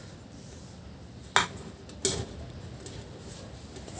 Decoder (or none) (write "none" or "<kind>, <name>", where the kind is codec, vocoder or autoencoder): none